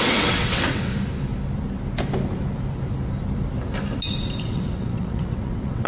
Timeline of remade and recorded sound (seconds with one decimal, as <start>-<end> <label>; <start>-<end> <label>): 0.0-0.9 remade; 0.9-4.4 recorded; 4.4-5.9 remade